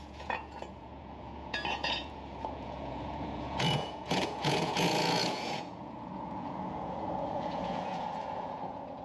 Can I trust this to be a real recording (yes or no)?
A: no